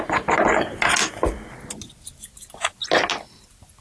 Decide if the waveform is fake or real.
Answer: real